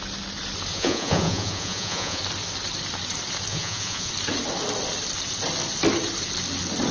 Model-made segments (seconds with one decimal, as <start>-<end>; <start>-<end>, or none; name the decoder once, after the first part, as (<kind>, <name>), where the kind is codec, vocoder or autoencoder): 0.7-2.2 (vocoder, Vocos); 3.5-4.1